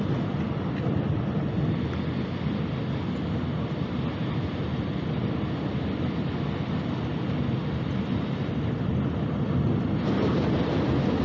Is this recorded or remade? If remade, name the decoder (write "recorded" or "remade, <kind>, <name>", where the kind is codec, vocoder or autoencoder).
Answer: recorded